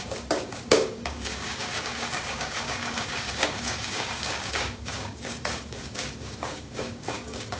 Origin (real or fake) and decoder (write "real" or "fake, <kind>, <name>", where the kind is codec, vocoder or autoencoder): fake, codec, DAC